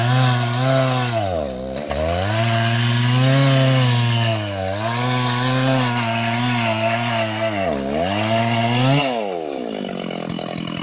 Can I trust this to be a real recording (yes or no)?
yes